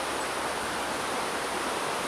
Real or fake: real